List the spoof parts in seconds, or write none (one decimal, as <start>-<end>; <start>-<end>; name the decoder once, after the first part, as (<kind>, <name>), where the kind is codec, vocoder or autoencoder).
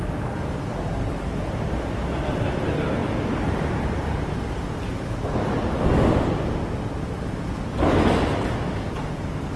none